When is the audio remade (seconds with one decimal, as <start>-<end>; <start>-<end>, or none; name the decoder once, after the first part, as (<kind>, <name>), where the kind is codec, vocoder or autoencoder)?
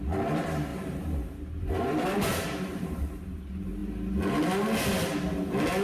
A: 0.7-1.7 (vocoder, BigVGAN v2); 2.1-3.2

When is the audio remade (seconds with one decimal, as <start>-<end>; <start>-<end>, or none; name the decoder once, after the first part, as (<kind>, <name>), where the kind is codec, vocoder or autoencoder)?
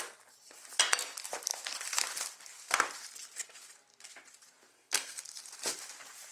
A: 4.7-5.2 (codec, SNAC)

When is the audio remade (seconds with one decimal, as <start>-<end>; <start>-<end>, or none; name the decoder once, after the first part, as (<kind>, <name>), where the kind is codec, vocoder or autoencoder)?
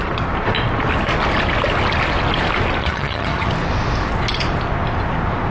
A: 2.8-3.5 (vocoder, HiFi-GAN)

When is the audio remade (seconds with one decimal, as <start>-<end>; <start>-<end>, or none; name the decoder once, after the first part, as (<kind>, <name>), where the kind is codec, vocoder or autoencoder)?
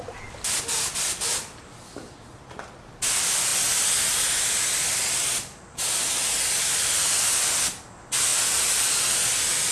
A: none